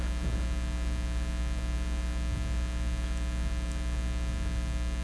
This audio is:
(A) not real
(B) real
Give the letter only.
B